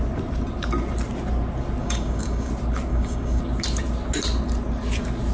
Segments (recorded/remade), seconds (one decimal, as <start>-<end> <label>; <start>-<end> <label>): 0.0-1.8 recorded; 1.8-2.5 remade; 2.5-2.9 recorded; 2.9-3.4 remade; 3.4-5.3 recorded